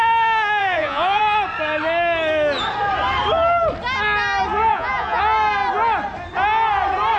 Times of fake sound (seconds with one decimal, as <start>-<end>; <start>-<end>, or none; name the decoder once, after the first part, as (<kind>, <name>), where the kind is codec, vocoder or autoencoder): 0.6-1.2 (vocoder, Vocos); 4.7-5.2